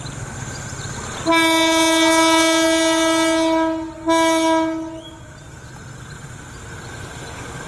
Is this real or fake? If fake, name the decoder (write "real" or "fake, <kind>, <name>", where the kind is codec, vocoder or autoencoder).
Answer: real